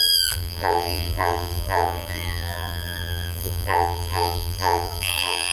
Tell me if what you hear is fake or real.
fake